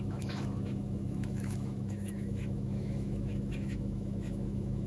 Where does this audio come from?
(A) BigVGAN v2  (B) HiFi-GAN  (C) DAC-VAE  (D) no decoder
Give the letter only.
C